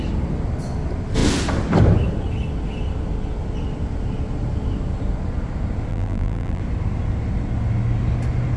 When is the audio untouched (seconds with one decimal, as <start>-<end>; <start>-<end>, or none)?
0.0-5.9; 6.6-8.6